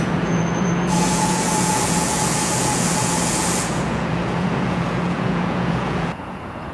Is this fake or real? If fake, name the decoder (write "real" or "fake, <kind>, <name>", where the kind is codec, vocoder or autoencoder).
fake, vocoder, Vocos